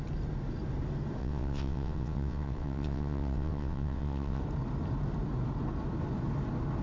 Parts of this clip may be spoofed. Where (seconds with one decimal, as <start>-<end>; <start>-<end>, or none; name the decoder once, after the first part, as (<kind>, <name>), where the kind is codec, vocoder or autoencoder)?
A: 1.2-4.4 (vocoder, WaveNeXt)